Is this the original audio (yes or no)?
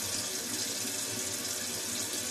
yes